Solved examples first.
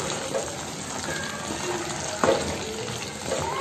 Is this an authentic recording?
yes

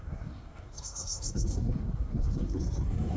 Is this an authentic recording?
no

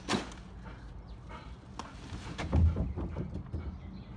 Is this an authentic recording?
yes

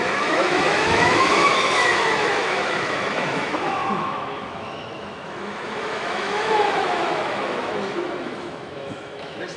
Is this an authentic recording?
no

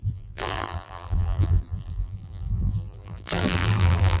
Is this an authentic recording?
no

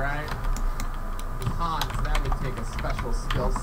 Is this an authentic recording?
yes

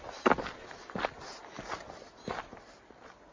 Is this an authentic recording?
yes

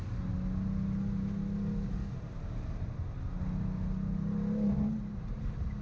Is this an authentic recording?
yes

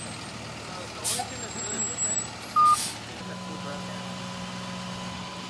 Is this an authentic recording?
yes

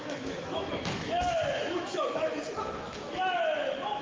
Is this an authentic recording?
no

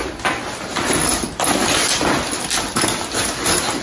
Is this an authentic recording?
yes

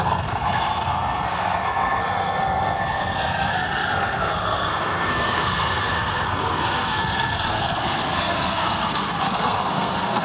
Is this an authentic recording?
no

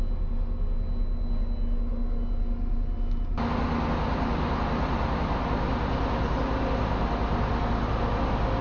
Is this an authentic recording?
yes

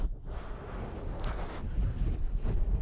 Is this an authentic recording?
yes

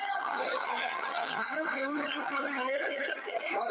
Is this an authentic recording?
no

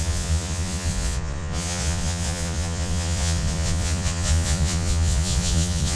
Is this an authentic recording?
no